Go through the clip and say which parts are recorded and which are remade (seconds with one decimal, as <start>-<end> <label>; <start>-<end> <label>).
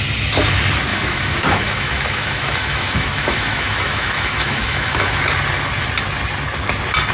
0.0-0.9 recorded; 0.9-5.2 remade; 5.2-7.1 recorded